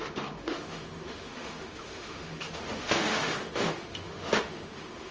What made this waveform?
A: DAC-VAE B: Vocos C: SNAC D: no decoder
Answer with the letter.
A